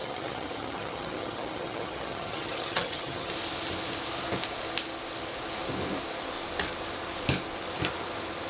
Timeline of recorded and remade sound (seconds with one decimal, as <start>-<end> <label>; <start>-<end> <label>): 0.0-3.3 remade; 3.3-8.5 recorded